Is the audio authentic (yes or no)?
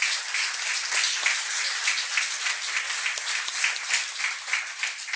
yes